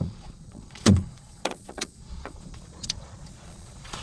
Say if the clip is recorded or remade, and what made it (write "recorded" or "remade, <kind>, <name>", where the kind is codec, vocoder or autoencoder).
remade, vocoder, Vocos